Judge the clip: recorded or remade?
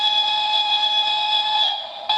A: remade